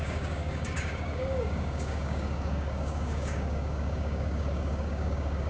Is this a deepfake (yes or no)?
yes